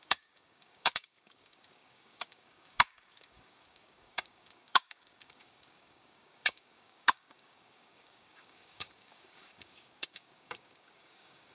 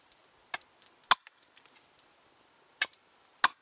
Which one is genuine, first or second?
second